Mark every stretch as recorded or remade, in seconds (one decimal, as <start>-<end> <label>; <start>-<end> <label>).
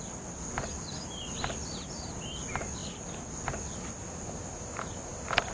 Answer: 0.0-5.5 recorded